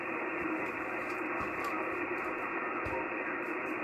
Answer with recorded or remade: remade